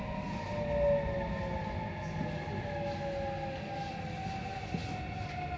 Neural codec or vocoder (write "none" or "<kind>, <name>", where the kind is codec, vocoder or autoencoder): none